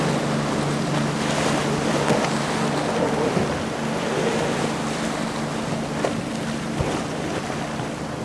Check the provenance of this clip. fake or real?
real